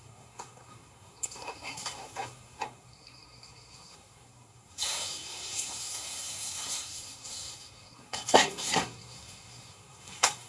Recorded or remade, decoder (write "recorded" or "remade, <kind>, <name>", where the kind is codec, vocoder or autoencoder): remade, codec, SNAC